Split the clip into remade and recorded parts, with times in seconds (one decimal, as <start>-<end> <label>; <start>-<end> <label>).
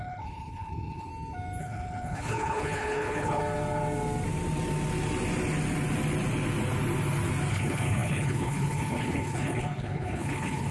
0.0-1.1 remade; 1.1-1.6 recorded; 1.6-3.4 remade; 3.4-7.5 recorded; 7.5-10.7 remade